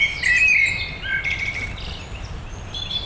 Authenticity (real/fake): real